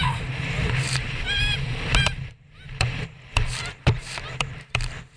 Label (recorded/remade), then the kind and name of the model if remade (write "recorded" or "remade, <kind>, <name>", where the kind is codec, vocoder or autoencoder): remade, vocoder, BigVGAN v2